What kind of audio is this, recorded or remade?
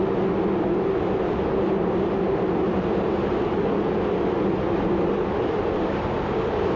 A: recorded